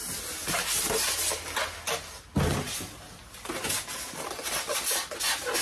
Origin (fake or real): real